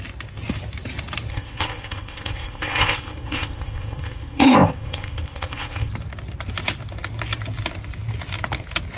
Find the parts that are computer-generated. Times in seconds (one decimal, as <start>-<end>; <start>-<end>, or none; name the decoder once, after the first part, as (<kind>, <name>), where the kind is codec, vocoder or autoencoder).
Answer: 1.3-5.9 (codec, ZipCodec)